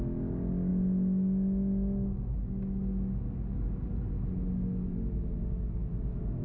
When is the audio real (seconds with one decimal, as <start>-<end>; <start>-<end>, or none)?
0.0-6.4